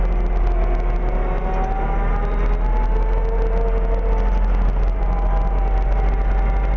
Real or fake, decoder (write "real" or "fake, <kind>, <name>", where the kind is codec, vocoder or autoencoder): real